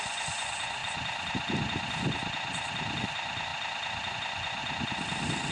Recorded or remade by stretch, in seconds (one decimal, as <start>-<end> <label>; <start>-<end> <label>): 0.0-0.8 remade; 0.8-3.0 recorded; 3.0-3.5 remade; 3.5-4.1 recorded; 4.1-4.6 remade; 4.6-5.5 recorded